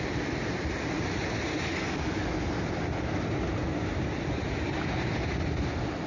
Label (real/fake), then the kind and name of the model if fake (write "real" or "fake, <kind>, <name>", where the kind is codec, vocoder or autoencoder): real